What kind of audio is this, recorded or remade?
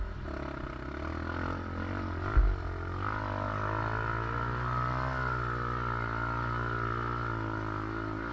recorded